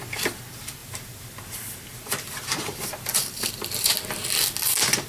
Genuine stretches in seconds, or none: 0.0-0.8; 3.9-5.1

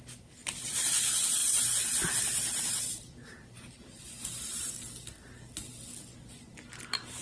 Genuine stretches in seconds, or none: 0.0-1.4; 4.7-7.2

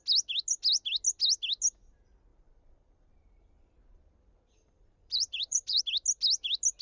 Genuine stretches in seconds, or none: 0.0-2.3; 5.8-6.8

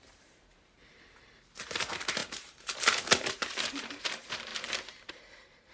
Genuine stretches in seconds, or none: none